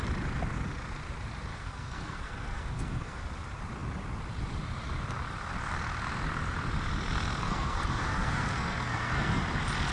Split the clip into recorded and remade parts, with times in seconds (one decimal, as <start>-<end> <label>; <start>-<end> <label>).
0.0-1.5 recorded; 1.5-3.2 remade; 3.2-7.4 recorded; 7.4-9.4 remade; 9.4-9.9 recorded